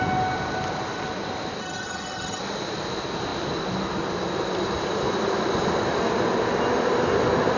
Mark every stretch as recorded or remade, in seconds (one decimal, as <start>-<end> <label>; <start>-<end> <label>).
0.0-1.6 recorded; 1.6-2.4 remade; 2.4-7.6 recorded